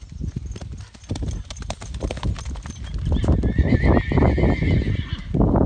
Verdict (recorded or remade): recorded